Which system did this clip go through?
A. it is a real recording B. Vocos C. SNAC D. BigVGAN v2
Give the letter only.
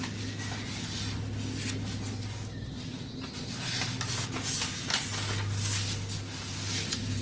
A